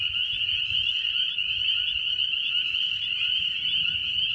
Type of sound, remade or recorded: recorded